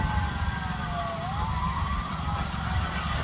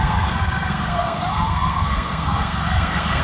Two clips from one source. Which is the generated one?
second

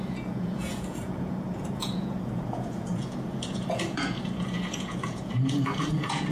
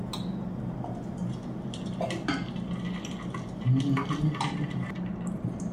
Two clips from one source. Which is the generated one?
first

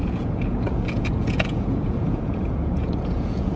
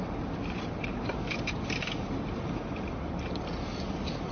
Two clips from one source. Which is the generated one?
first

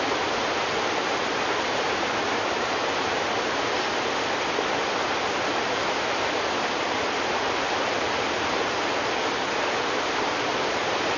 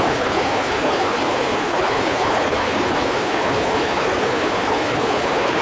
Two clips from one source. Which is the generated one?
second